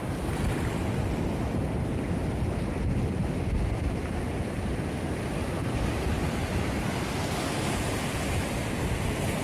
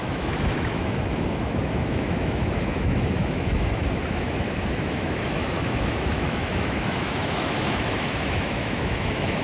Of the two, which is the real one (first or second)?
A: first